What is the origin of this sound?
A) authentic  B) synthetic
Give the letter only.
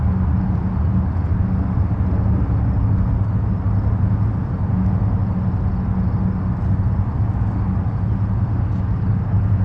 A